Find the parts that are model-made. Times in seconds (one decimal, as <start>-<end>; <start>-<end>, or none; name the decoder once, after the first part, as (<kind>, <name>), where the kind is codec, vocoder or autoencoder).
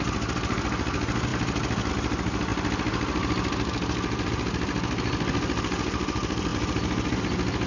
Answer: none